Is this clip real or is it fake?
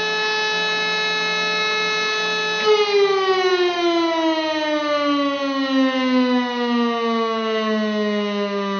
real